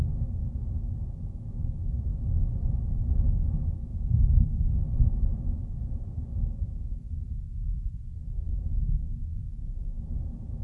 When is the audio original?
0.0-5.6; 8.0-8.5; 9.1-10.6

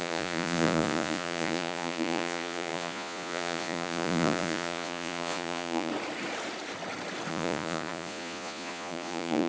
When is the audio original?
5.9-7.3

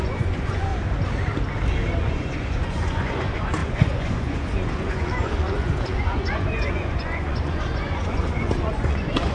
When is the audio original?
0.7-2.0

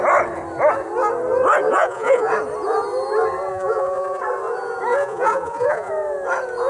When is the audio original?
0.0-1.7; 2.3-3.5; 4.2-4.9; 5.9-6.7

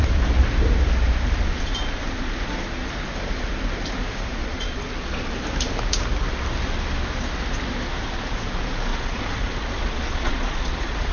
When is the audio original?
0.0-4.4; 5.1-8.9

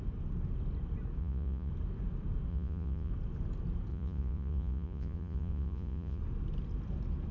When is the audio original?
0.0-1.2; 1.7-2.5; 3.1-3.9; 6.2-7.3